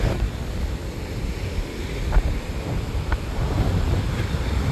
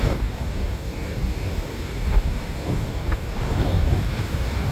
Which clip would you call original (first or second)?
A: first